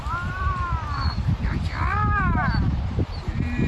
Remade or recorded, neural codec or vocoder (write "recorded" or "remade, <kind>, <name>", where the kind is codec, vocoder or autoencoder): remade, vocoder, BigVGAN v2